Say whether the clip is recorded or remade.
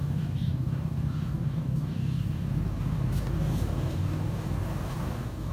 remade